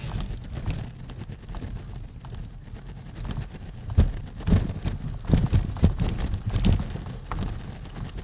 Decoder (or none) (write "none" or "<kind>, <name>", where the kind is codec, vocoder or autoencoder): none